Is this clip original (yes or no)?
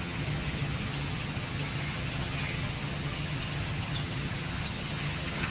no